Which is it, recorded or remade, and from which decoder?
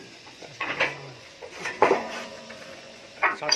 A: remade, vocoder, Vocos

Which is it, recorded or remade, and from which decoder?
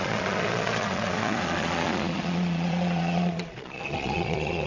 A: remade, vocoder, Vocos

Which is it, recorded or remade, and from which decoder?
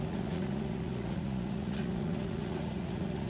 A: remade, vocoder, Vocos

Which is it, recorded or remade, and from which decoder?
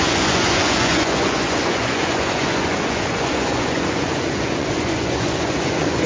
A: remade, vocoder, Vocos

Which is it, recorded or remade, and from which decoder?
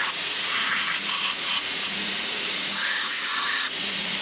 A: remade, vocoder, Vocos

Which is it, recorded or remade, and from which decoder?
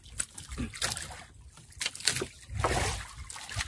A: recorded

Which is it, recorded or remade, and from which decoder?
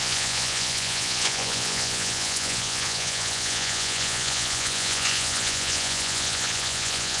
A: remade, vocoder, Vocos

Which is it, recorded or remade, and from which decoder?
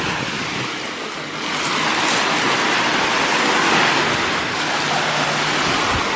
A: recorded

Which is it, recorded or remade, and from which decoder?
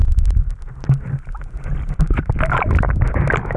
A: recorded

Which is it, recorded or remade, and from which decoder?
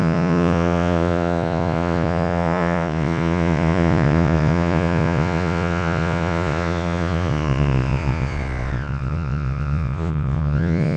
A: remade, vocoder, Vocos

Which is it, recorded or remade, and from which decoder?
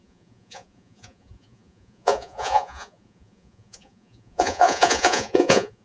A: remade, vocoder, Vocos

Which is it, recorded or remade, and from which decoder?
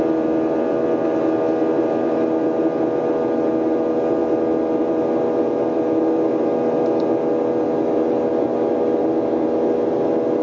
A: recorded